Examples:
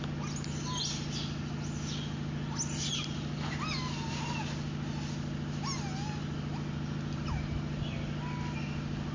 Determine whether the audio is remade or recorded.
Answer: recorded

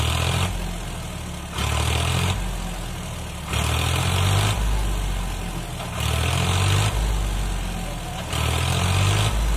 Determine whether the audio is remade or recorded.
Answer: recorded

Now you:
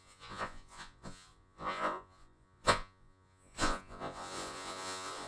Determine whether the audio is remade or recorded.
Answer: remade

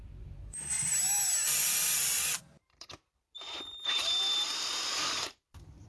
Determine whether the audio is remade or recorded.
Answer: remade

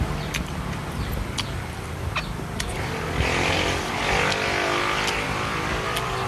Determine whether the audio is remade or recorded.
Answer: recorded